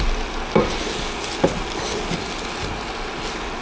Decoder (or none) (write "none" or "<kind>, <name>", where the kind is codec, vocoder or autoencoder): none